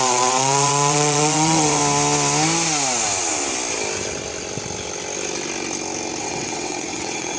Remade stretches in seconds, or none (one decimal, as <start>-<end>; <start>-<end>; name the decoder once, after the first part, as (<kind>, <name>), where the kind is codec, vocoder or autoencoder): 0.0-1.8 (vocoder, WaveNeXt); 6.2-7.4